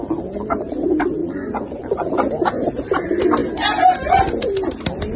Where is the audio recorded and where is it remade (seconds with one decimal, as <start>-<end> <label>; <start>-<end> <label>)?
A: 0.0-1.2 recorded; 1.2-2.1 remade; 2.1-5.2 recorded